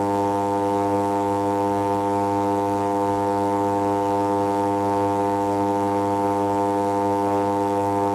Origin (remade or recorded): remade